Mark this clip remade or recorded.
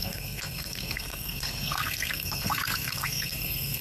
remade